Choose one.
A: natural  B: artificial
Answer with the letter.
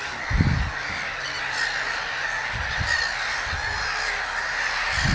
A